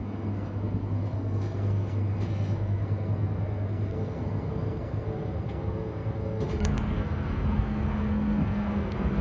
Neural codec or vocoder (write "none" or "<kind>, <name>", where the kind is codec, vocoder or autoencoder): codec, SNAC